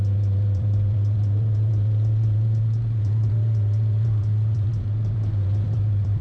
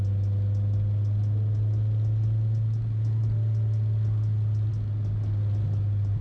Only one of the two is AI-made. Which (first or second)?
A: first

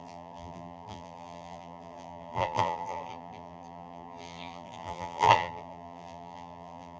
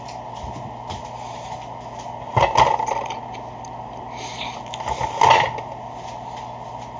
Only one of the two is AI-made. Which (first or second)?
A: first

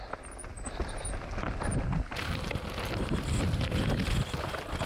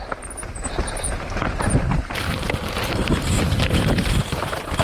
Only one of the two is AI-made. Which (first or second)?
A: second